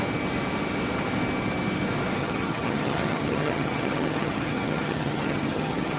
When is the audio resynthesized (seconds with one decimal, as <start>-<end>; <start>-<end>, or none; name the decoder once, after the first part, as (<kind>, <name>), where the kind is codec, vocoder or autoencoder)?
2.2-6.0 (vocoder, HiFi-GAN)